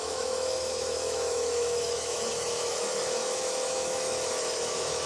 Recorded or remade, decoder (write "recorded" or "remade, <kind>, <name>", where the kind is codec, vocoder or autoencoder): remade, autoencoder, DAC-VAE